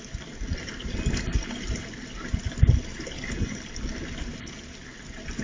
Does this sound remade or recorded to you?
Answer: recorded